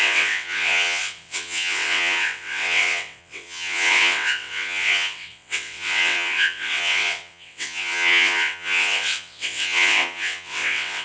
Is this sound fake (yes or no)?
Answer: yes